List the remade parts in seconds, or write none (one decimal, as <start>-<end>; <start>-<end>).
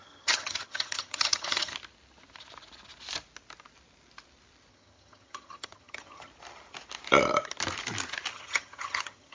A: 0.0-1.7; 4.7-6.3; 8.3-9.3